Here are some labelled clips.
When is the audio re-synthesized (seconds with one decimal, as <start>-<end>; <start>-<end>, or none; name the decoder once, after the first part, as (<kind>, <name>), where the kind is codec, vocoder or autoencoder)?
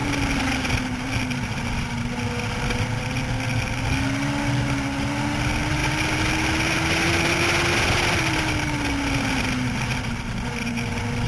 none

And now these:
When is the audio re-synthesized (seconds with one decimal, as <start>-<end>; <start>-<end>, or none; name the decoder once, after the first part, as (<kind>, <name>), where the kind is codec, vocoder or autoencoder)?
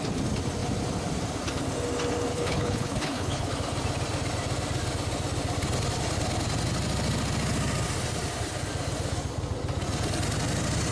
2.3-3.5 (codec, HILCodec)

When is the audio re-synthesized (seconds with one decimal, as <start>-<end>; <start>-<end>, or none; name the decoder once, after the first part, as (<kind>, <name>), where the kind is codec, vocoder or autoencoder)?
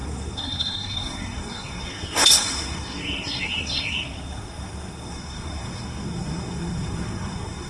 0.0-7.7 (codec, SNAC)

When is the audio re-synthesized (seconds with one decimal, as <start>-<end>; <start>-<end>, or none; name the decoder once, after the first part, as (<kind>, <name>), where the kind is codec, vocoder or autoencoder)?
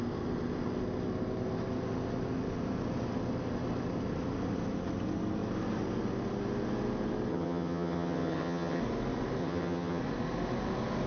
7.3-8.8 (vocoder, HiFi-GAN); 9.4-10.0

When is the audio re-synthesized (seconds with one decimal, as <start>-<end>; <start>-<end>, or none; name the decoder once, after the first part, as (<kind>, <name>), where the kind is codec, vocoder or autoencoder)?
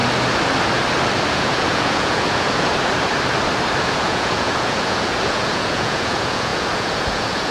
1.3-2.7 (vocoder, Vocos); 3.8-7.5